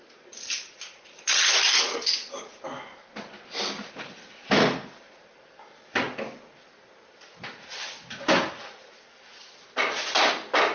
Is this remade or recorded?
recorded